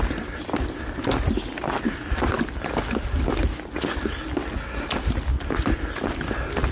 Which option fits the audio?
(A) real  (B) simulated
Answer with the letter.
A